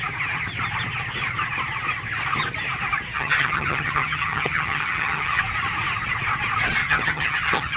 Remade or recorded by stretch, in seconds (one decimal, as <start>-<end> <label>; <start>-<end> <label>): 0.0-3.1 recorded; 3.1-5.4 remade; 5.4-6.8 recorded; 6.8-7.8 remade